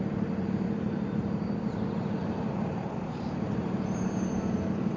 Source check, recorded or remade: recorded